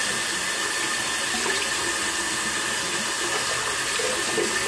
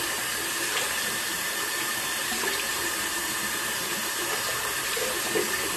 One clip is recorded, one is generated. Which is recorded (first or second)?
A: first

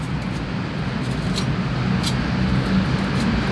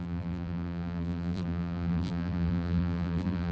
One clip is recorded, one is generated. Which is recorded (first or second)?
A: first